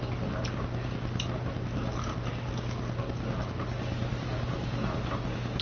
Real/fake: real